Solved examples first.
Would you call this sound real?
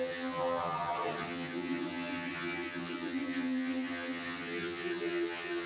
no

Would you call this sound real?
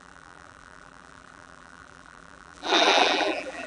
no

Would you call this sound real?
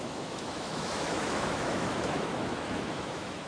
no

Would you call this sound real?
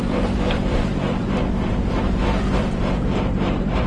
no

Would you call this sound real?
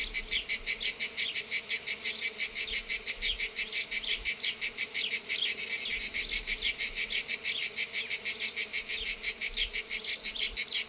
yes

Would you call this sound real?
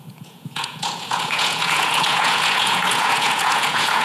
no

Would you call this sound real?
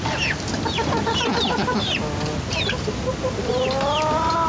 yes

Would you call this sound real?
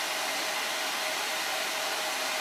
yes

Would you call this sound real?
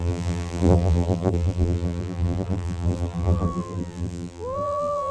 no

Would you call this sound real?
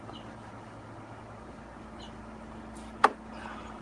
yes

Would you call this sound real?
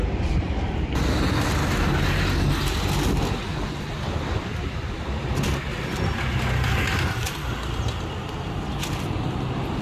yes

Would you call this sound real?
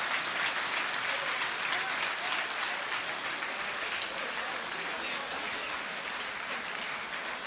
yes